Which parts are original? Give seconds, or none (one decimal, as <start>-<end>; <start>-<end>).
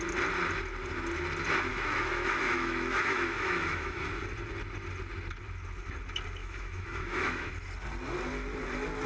0.0-1.7; 4.2-6.4; 7.5-9.1